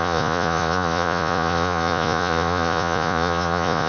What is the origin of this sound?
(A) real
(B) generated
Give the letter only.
B